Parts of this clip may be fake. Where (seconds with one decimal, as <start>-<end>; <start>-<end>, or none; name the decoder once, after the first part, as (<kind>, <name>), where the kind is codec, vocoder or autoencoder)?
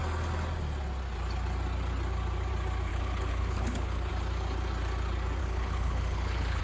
2.9-4.1 (codec, HILCodec); 5.4-6.6